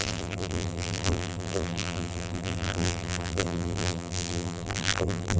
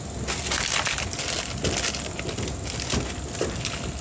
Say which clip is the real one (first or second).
second